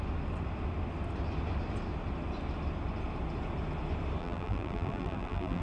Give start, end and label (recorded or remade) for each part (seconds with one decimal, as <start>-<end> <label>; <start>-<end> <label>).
0.0-4.2 recorded; 4.2-5.6 remade

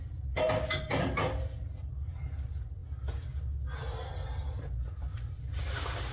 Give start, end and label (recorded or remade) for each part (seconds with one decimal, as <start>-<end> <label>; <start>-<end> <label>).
0.0-6.1 recorded

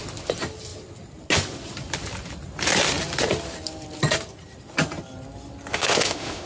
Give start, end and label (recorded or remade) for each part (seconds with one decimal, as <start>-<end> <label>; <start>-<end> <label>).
0.0-5.7 recorded; 5.7-6.5 remade

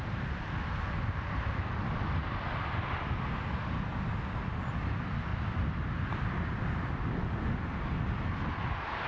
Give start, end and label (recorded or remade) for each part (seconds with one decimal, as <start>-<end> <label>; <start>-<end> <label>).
0.0-9.1 recorded

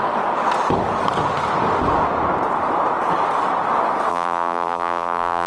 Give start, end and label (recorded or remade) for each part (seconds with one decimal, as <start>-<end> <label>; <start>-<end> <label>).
0.0-4.1 recorded; 4.1-5.5 remade

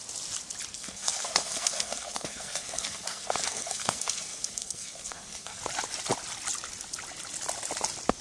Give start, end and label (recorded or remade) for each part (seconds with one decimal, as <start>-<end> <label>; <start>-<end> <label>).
0.0-0.7 recorded; 0.7-5.6 remade; 5.6-8.2 recorded